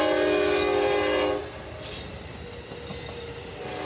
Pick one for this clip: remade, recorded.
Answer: recorded